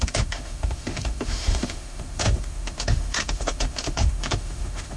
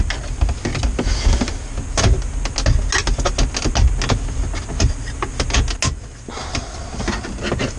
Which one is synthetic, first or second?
first